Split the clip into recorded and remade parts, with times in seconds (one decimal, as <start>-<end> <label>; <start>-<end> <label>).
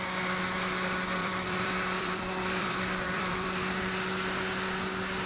0.0-1.2 recorded; 1.2-3.8 remade; 3.8-5.3 recorded